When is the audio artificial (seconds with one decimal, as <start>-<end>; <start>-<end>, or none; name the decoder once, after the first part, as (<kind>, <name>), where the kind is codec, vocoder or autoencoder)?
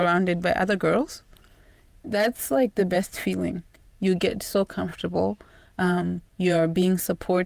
1.5-4.9 (vocoder, Vocos); 5.5-7.5